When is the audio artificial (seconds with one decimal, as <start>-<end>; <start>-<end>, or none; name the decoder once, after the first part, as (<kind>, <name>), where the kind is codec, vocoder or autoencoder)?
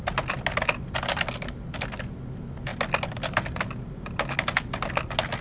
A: none